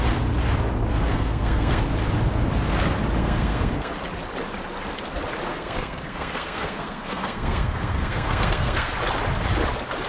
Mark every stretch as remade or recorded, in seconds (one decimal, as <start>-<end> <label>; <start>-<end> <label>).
0.0-0.9 recorded; 0.9-1.8 remade; 1.8-3.2 recorded; 3.2-3.9 remade; 3.9-5.5 recorded; 5.5-8.9 remade; 8.9-10.1 recorded